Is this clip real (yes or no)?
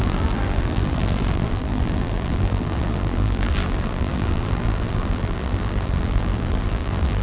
no